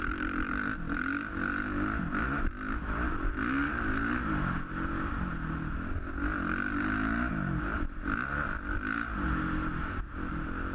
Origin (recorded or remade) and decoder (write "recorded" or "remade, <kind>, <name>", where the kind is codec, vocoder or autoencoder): recorded